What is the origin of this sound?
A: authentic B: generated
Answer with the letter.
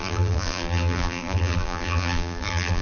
B